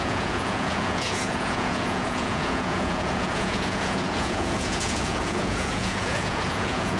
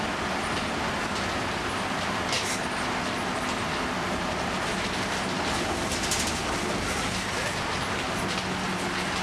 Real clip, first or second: second